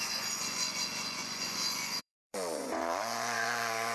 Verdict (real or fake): fake